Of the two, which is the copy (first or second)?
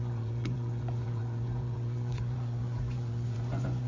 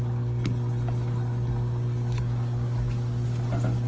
first